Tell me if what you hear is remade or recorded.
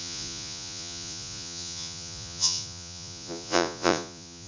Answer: remade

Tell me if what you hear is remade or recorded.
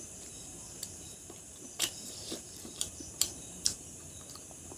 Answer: remade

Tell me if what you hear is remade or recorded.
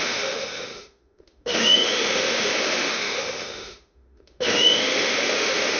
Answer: remade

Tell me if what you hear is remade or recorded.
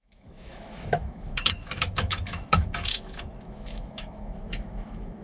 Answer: remade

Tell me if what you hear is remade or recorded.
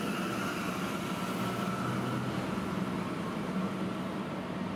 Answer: recorded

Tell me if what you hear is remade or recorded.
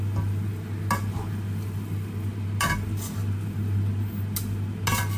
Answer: recorded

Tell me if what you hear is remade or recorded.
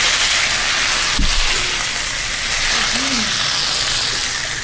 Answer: recorded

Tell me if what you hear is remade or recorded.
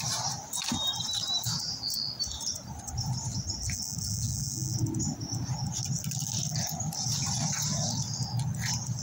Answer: recorded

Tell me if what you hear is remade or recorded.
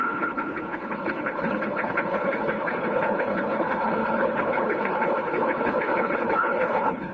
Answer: remade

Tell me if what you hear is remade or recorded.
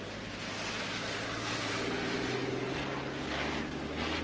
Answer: recorded